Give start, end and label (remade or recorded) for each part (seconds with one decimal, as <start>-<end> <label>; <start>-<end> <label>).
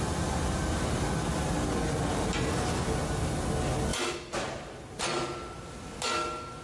0.0-2.1 recorded; 2.1-2.8 remade; 2.8-3.9 recorded; 3.9-6.0 remade; 6.0-6.6 recorded